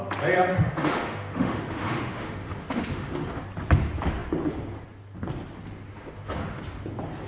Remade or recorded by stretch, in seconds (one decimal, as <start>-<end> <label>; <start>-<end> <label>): 0.0-0.5 recorded; 0.5-3.4 remade; 3.4-5.9 recorded; 5.9-6.6 remade; 6.6-7.3 recorded